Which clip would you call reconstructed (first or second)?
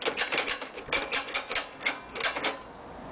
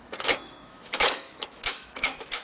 second